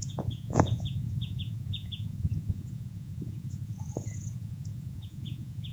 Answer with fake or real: fake